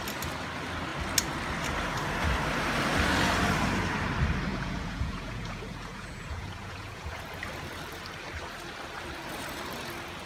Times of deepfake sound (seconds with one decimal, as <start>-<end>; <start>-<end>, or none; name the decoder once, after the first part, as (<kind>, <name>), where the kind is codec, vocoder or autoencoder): 4.5-7.2 (vocoder, Vocos)